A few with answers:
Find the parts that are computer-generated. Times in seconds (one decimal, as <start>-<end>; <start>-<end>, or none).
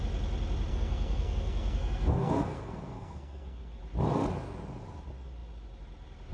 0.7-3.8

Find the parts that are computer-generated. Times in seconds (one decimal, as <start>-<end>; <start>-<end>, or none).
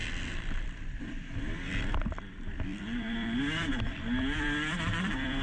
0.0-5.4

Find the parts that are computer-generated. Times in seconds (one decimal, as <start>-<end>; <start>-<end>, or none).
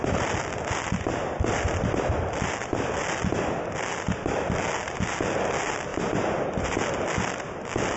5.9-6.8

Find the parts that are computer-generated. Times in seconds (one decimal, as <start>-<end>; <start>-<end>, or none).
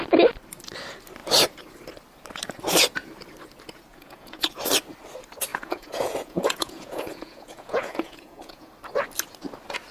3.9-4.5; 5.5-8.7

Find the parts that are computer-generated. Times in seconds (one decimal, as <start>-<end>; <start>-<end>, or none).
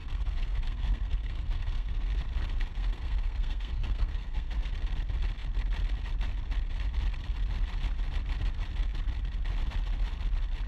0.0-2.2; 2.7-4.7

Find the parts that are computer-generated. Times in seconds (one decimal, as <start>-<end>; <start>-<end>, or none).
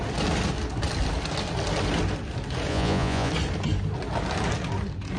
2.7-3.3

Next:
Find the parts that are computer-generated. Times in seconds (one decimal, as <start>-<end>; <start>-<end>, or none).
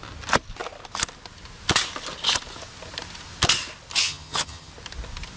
4.0-4.7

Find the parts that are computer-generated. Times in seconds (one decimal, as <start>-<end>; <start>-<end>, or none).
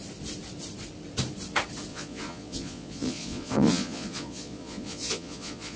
1.9-5.8